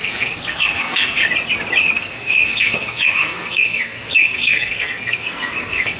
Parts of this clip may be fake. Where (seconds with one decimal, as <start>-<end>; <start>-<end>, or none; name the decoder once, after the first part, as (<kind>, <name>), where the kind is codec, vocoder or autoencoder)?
0.0-1.2 (codec, SNAC); 1.8-6.0